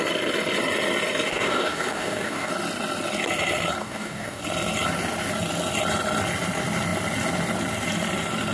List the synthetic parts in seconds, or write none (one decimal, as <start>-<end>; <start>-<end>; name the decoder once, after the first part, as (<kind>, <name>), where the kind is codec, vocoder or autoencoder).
1.3-2.5 (codec, DAC); 3.8-4.4